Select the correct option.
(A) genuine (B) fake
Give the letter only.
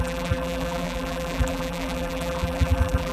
B